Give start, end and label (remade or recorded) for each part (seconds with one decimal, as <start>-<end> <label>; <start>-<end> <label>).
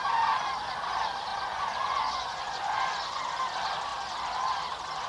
0.0-1.3 recorded; 1.3-3.2 remade; 3.2-5.1 recorded